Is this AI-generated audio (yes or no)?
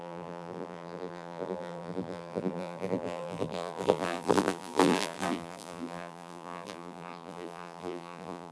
yes